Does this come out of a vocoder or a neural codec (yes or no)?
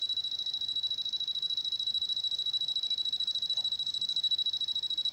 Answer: yes